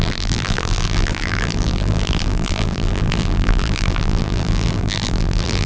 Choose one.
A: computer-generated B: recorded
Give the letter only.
A